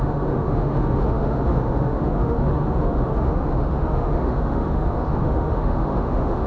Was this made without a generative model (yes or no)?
no